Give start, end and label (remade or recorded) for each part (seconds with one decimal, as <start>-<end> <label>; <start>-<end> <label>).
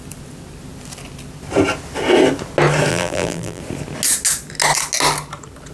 0.0-2.9 recorded; 2.9-3.6 remade; 3.6-5.7 recorded